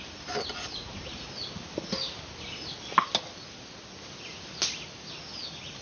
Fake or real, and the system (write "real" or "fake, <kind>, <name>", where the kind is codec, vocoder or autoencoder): real